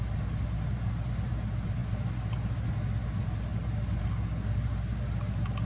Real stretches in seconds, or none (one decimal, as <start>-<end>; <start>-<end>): 0.0-5.6